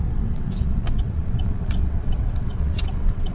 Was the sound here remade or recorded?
remade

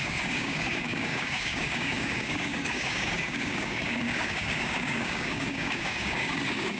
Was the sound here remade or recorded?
remade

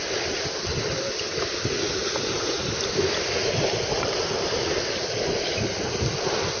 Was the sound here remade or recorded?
recorded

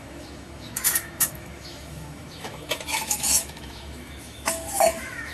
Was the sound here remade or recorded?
remade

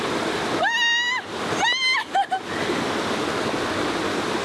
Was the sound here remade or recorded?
recorded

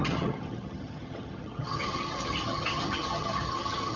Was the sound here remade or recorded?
remade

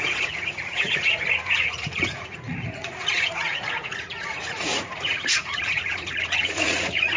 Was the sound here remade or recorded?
remade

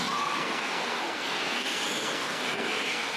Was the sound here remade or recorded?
remade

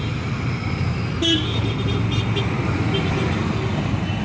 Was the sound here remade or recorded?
recorded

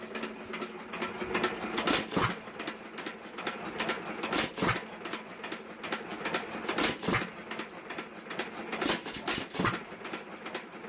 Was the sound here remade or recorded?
recorded